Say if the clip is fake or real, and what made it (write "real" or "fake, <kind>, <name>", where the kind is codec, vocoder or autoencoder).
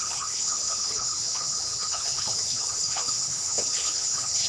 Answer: fake, codec, HILCodec